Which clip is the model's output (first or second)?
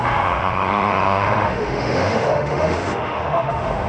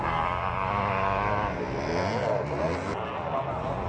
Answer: first